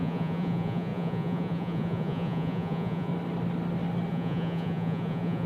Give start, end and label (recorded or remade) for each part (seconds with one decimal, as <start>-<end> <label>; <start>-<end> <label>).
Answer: 0.0-3.1 remade; 3.1-4.1 recorded; 4.1-5.5 remade